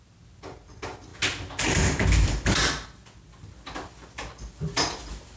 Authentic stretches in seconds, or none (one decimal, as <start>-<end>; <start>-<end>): 0.0-5.4